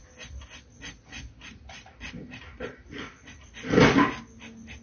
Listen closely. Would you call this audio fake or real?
real